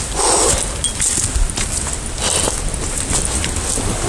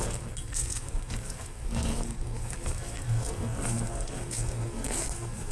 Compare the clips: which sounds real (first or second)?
first